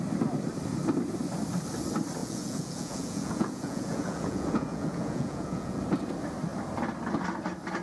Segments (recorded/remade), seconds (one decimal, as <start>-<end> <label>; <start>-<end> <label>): 0.0-2.2 recorded; 2.2-5.8 remade; 5.8-7.8 recorded